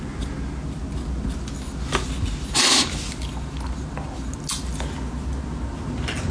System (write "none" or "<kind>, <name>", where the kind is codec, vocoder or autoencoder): none